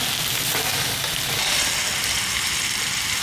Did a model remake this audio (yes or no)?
no